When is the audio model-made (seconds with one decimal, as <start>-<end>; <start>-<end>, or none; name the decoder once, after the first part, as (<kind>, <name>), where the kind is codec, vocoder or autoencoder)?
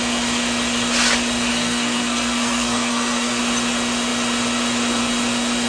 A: 1.5-3.4 (codec, SNAC)